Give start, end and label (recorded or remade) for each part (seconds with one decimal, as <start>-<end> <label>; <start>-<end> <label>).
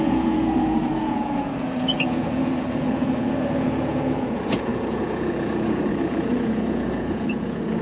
0.0-7.8 remade